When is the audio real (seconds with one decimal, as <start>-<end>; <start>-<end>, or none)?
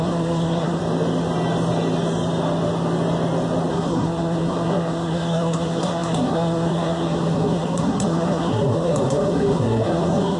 0.8-3.7